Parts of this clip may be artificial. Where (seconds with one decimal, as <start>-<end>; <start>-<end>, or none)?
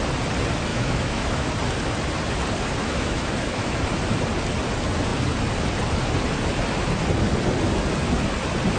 0.7-1.5; 2.8-3.7